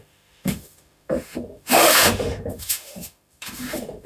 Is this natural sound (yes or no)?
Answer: no